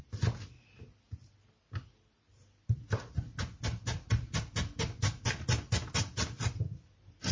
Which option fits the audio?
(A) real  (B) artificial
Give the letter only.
A